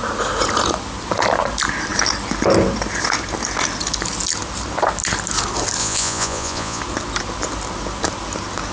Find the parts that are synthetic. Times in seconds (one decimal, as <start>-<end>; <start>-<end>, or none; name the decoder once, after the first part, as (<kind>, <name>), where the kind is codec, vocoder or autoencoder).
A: 5.8-6.8 (vocoder, Vocos)